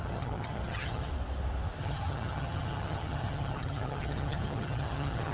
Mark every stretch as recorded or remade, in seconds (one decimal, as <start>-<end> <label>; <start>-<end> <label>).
0.0-1.1 remade; 1.1-1.8 recorded; 1.8-5.3 remade